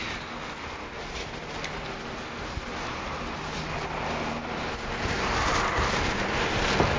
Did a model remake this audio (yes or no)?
no